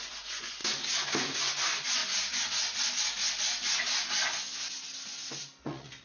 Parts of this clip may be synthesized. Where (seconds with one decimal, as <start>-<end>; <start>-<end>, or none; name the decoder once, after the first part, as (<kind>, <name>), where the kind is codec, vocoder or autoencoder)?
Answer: 0.0-0.6 (vocoder, Vocos); 1.2-2.0; 5.6-6.0